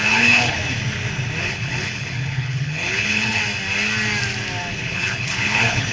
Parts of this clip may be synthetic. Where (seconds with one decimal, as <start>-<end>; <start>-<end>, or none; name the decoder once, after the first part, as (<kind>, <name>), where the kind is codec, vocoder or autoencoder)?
0.0-0.6 (codec, HILCodec); 1.4-3.4; 4.7-5.9